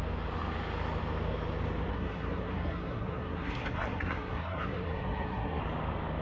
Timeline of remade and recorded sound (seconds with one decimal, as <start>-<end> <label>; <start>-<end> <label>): 0.0-1.9 recorded; 1.9-5.6 remade; 5.6-6.2 recorded